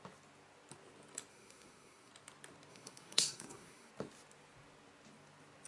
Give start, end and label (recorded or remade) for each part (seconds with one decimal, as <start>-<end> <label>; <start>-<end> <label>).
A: 0.0-1.3 recorded; 1.3-2.1 remade; 2.1-2.7 recorded; 2.7-3.9 remade; 3.9-5.7 recorded